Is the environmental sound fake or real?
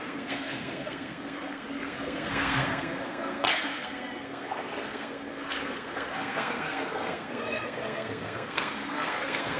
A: fake